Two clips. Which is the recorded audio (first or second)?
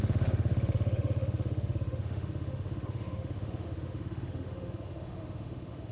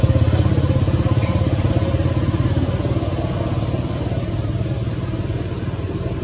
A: second